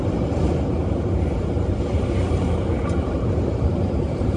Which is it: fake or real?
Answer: fake